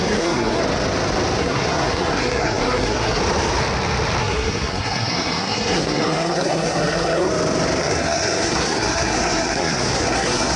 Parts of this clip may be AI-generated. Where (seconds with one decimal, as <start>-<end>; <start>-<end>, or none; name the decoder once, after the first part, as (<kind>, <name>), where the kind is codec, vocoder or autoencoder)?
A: 0.0-0.6 (codec, SNAC); 1.4-3.2; 4.2-7.3; 7.8-10.6